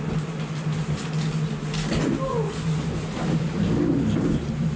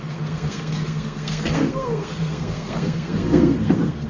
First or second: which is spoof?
second